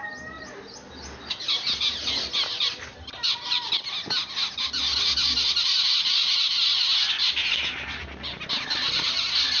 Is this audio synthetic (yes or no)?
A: no